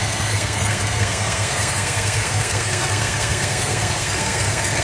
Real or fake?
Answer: fake